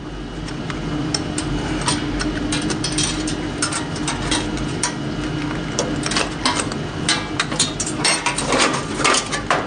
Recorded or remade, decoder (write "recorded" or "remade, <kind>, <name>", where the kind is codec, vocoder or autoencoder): recorded